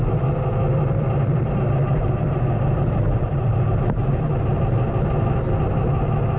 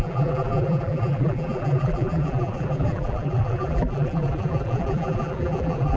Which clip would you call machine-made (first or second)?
second